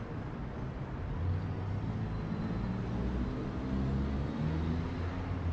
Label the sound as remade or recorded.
recorded